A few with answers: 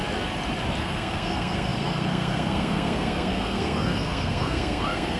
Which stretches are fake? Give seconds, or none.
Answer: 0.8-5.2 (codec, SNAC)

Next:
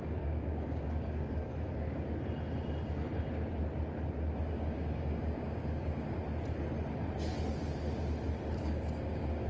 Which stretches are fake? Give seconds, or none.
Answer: 0.0-1.5 (codec, DAC); 4.5-6.2; 8.6-9.5

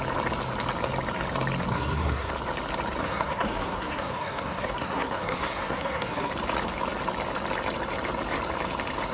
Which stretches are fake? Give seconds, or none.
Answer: 1.7-2.3 (codec, SNAC); 3.0-6.3

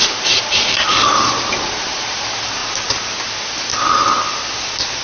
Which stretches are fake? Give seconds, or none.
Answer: 0.0-0.9 (vocoder, BigVGAN v2); 1.5-2.6